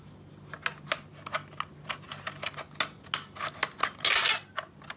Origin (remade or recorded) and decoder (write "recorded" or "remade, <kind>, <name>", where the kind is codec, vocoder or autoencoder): recorded